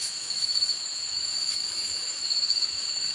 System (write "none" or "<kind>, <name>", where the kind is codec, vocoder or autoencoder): autoencoder, DAC-VAE